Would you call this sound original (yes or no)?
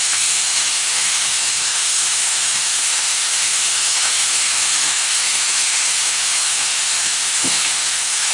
no